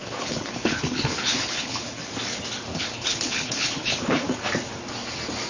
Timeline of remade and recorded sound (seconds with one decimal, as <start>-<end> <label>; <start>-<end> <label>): 0.0-2.1 remade; 2.1-2.7 recorded; 2.7-4.5 remade; 4.5-5.5 recorded